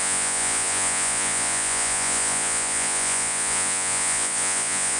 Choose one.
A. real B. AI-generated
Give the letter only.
B